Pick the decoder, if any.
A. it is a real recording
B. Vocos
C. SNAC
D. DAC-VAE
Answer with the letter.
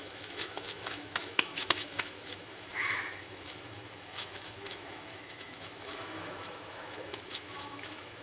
D